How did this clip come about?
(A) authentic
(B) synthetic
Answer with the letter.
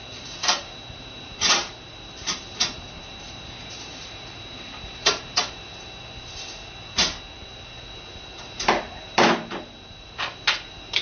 B